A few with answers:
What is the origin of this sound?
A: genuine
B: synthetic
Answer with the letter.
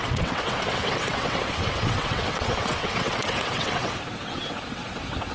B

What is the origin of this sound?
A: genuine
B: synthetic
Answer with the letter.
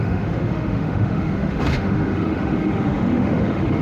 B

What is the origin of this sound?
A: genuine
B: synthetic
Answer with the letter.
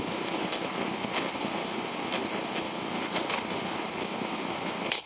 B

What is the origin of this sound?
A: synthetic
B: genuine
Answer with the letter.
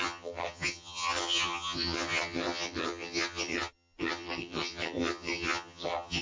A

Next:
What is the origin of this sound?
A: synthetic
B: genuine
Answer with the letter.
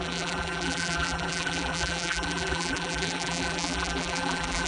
A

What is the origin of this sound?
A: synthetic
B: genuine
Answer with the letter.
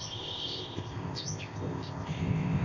A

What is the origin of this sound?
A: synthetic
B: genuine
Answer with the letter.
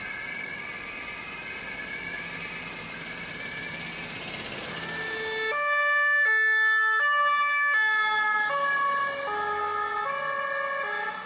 B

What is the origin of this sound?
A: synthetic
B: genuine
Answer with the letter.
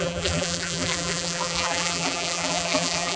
A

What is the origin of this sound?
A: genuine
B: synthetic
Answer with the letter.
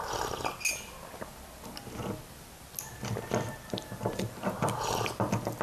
A